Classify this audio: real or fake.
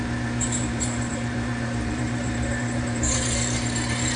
fake